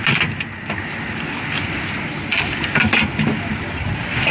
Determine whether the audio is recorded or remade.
recorded